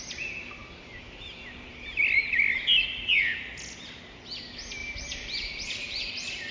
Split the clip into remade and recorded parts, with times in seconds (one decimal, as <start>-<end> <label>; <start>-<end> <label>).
0.0-4.8 recorded; 4.8-6.1 remade; 6.1-6.5 recorded